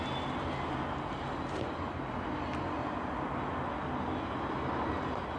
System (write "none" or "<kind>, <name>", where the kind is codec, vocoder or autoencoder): none